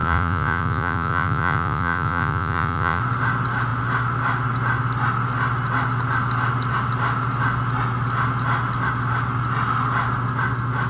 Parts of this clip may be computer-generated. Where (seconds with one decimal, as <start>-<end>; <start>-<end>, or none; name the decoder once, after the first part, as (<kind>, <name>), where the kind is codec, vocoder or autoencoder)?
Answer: 0.0-3.0 (vocoder, Vocos)